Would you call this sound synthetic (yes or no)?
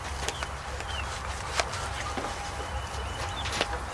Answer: no